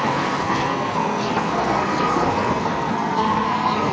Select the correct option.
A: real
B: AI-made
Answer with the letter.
B